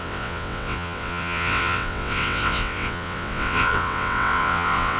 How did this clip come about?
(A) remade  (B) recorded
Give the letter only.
A